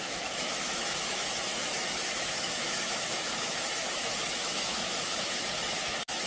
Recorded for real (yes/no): no